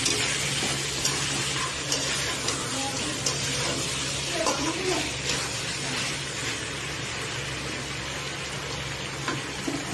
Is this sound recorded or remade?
recorded